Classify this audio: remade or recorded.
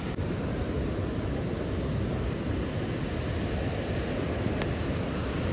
recorded